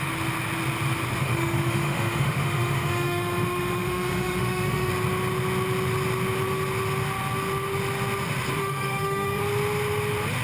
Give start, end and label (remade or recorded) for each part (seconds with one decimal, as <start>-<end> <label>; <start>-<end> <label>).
0.0-1.2 recorded; 1.2-4.9 remade; 4.9-8.6 recorded; 8.6-9.4 remade; 9.4-10.4 recorded